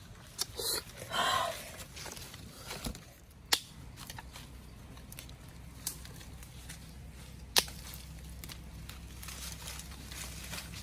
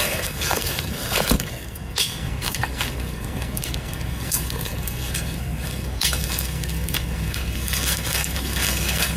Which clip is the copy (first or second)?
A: second